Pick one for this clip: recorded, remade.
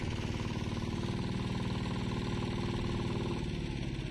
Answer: recorded